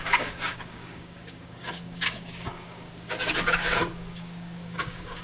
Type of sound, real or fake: fake